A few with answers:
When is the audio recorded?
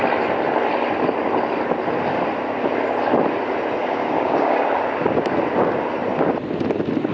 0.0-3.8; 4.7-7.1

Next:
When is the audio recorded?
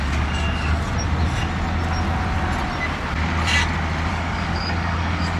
0.9-4.1